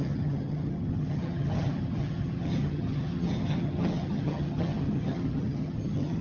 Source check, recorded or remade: remade